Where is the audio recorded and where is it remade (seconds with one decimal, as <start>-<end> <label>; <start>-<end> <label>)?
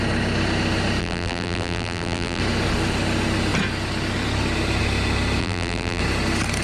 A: 0.0-1.0 recorded; 1.0-2.4 remade; 2.4-5.4 recorded; 5.4-6.0 remade; 6.0-6.6 recorded